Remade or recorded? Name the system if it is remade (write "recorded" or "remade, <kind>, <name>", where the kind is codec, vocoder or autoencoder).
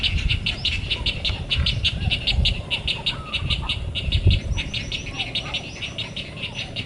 recorded